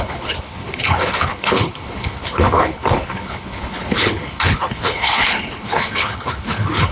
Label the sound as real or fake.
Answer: fake